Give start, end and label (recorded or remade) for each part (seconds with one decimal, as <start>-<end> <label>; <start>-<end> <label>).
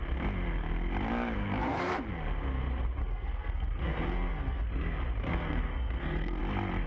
0.0-1.4 recorded; 1.4-2.1 remade; 2.1-3.0 recorded; 3.0-4.7 remade; 4.7-5.3 recorded; 5.3-6.4 remade; 6.4-6.9 recorded